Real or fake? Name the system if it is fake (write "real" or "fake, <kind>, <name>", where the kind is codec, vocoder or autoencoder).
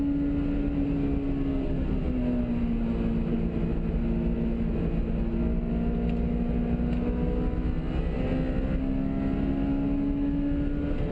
real